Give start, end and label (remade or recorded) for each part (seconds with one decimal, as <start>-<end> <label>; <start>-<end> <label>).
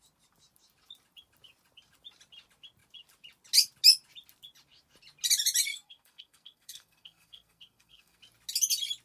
0.0-5.7 recorded; 5.7-8.2 remade; 8.2-9.0 recorded